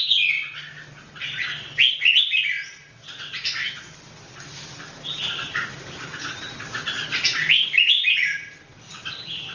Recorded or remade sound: recorded